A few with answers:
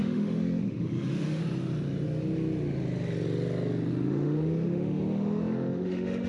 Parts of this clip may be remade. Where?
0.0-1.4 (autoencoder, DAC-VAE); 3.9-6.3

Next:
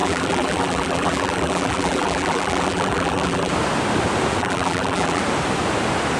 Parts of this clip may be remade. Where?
0.0-3.5 (vocoder, BigVGAN v2); 4.4-5.2